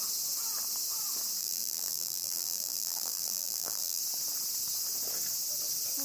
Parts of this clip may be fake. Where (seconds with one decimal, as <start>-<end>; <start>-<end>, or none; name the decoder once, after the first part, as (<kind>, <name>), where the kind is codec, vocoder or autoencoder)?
1.4-4.0 (vocoder, BigVGAN v2)